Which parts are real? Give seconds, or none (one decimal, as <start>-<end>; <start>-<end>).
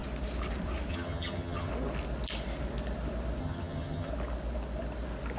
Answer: 0.0-0.9; 1.7-3.4; 4.1-5.4